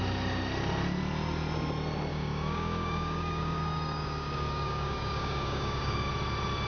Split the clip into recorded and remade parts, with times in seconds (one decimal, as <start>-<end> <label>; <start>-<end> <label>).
0.0-2.1 recorded; 2.1-6.1 remade; 6.1-6.7 recorded